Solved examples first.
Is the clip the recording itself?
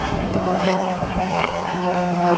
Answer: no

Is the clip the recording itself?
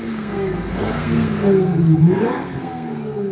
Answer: no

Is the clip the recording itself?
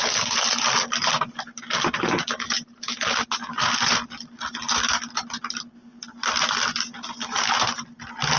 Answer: yes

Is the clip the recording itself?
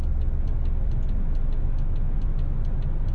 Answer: yes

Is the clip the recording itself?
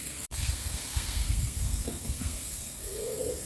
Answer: no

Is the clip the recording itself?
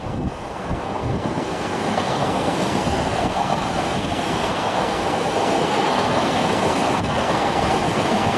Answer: no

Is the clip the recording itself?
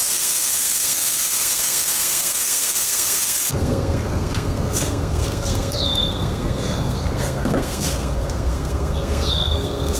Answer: no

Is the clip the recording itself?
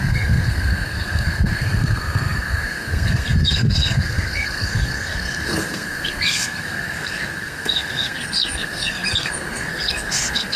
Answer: no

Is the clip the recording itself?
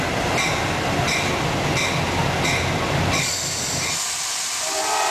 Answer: yes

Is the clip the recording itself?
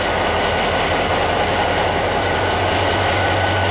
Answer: yes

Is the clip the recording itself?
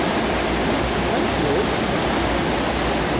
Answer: yes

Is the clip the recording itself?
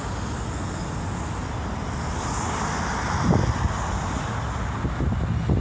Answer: yes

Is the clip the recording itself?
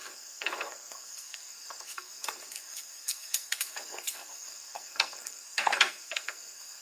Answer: no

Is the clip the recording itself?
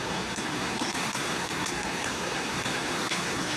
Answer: no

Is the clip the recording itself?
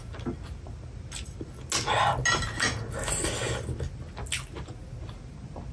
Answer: yes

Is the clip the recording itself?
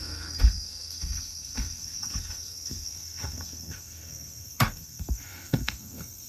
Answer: no